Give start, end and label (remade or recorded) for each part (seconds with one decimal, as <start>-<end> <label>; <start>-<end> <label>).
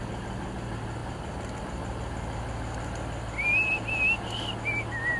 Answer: 0.0-5.2 recorded